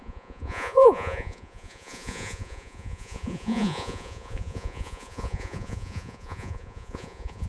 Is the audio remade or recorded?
remade